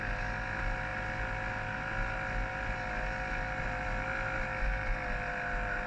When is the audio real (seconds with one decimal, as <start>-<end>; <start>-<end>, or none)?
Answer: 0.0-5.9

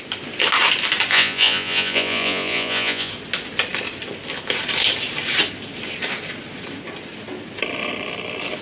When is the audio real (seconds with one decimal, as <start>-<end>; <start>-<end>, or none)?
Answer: 0.0-1.1; 3.1-8.6

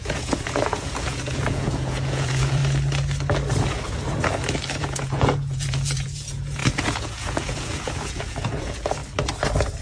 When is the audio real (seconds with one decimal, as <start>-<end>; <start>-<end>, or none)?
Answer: 2.6-4.8; 9.0-9.8

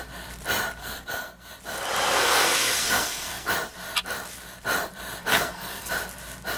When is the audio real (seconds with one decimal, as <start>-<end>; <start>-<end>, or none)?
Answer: 0.0-0.8; 1.5-2.2; 3.5-5.3; 5.9-6.6